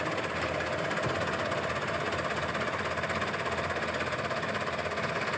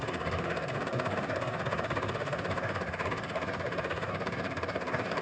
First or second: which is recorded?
first